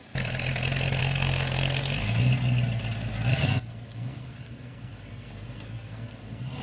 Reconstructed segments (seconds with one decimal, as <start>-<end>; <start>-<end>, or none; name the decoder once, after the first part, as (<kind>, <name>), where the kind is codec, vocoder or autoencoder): 1.0-2.2 (codec, SNAC); 3.3-6.6